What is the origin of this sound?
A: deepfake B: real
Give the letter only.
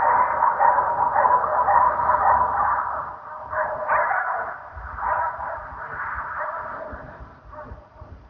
A